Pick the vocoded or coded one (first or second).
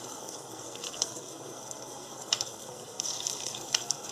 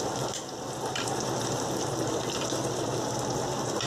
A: first